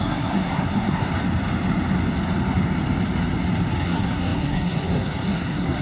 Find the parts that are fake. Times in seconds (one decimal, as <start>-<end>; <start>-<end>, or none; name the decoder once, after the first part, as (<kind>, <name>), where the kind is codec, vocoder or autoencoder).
0.0-1.1 (codec, SNAC); 3.8-5.8